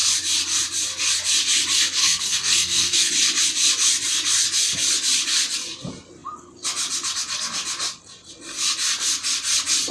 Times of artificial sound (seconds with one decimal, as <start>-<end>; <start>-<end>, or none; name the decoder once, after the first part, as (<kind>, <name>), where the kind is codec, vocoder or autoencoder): 2.0-3.1 (codec, SNAC)